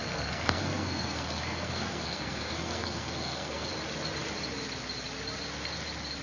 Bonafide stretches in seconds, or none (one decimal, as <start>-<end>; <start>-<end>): 3.7-6.2